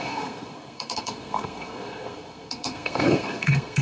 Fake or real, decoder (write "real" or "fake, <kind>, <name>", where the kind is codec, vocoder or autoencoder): fake, codec, SNAC